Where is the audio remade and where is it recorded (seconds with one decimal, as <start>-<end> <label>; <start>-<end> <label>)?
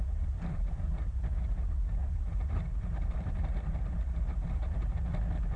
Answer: 0.0-5.6 recorded